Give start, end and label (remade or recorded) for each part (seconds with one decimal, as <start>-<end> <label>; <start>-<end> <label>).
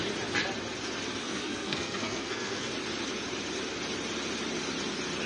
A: 0.0-1.2 recorded; 1.2-2.7 remade; 2.7-5.3 recorded